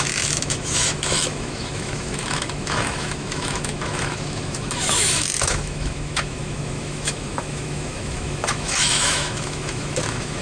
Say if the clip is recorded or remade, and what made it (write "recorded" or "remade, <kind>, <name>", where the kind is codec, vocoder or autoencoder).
remade, autoencoder, DAC-VAE